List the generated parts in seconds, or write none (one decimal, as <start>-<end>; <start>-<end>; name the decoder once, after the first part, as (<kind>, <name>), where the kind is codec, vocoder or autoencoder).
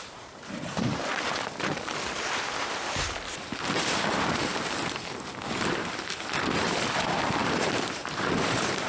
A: 0.0-1.1 (vocoder, BigVGAN v2); 2.6-4.5; 5.5-8.9